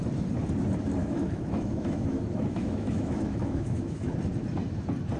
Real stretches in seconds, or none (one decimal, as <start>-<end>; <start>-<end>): 0.0-1.0; 4.1-5.2